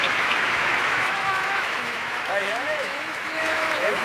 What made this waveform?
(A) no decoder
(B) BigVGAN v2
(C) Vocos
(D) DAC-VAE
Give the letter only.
D